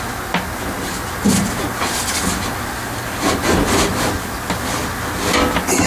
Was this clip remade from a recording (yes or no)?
no